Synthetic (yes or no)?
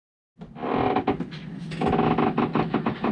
no